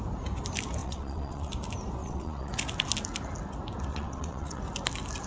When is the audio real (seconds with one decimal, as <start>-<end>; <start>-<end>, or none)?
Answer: 0.0-0.8; 1.5-2.0; 2.5-3.9; 4.6-5.3